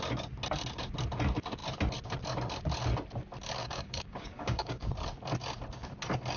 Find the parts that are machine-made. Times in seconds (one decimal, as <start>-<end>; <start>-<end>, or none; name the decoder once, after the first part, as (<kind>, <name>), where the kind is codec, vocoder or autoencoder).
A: 3.6-4.9 (codec, DAC)